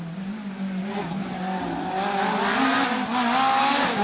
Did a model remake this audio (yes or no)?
no